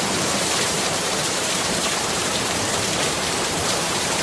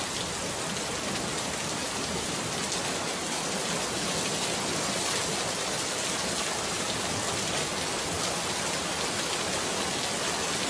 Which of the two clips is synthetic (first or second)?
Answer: first